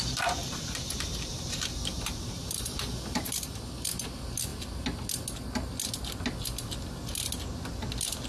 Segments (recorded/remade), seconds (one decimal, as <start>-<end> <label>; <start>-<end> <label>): 0.0-0.4 recorded; 0.4-3.6 remade; 3.6-8.3 recorded